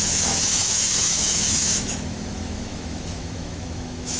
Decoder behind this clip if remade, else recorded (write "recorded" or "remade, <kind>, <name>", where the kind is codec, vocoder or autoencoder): remade, autoencoder, DAC-VAE